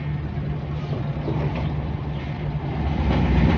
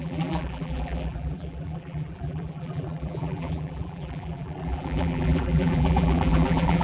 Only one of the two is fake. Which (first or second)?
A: second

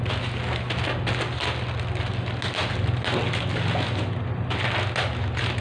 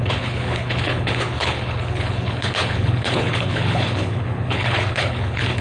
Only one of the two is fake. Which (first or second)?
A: second